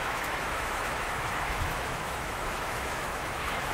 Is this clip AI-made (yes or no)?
yes